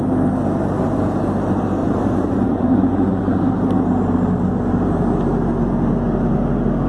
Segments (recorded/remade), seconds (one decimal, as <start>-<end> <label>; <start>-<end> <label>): 0.0-1.8 recorded; 1.8-3.4 remade; 3.4-6.9 recorded